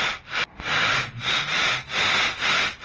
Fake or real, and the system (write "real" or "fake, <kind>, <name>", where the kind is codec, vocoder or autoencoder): real